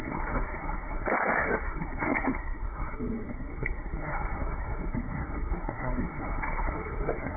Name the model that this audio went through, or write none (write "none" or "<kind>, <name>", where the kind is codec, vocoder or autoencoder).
codec, SNAC